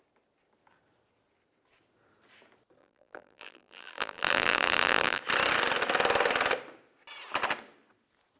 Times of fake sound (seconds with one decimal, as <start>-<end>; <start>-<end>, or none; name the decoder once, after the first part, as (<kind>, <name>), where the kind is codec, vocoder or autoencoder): 2.8-5.2 (vocoder, BigVGAN v2)